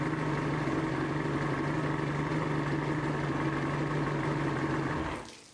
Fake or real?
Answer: real